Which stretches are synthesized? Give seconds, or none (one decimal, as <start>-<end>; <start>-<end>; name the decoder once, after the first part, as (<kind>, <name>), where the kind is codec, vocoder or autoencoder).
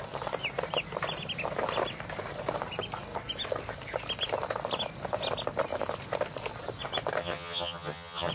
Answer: 7.2-8.3 (vocoder, HiFi-GAN)